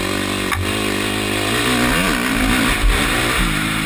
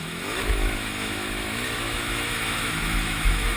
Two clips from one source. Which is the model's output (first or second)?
second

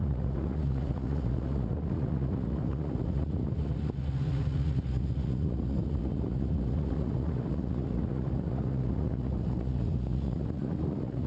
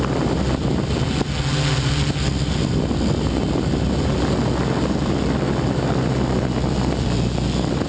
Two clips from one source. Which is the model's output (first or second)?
first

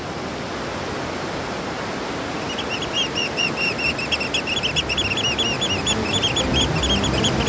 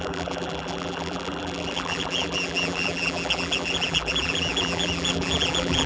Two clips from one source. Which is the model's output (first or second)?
second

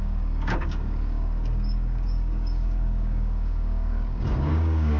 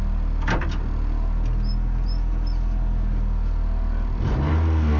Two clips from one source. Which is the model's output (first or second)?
first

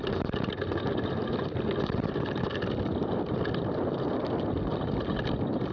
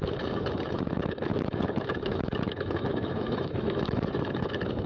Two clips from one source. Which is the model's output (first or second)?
second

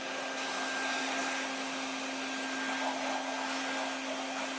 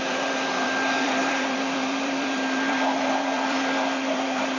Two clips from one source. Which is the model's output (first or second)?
second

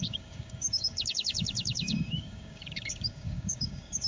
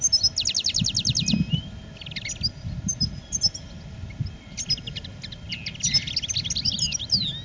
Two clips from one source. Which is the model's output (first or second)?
first